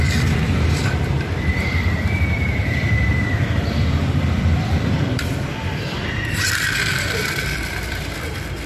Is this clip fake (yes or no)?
yes